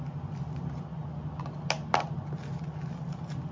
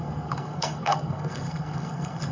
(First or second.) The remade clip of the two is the second